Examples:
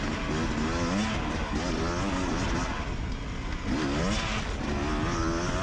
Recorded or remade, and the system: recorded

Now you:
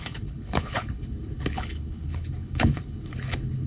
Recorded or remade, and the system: remade, codec, HILCodec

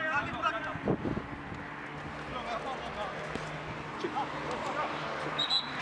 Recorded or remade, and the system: recorded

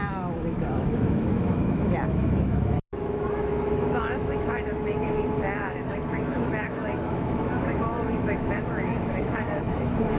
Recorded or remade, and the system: remade, autoencoder, DAC-VAE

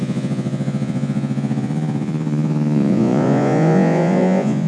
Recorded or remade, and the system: remade, vocoder, Vocos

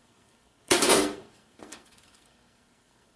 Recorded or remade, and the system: remade, codec, SNAC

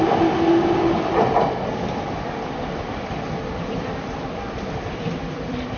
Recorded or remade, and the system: remade, vocoder, BigVGAN v2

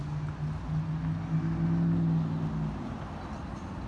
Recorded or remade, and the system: recorded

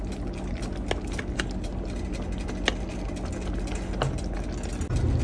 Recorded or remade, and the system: recorded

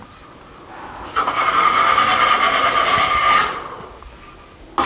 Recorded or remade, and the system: recorded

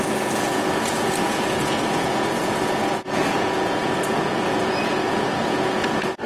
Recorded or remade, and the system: remade, vocoder, Vocos